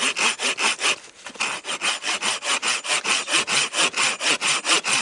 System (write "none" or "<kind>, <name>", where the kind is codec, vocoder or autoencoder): none